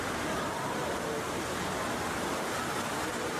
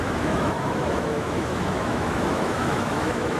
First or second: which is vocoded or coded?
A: second